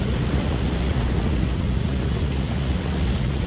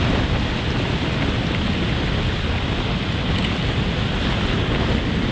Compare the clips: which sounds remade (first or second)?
first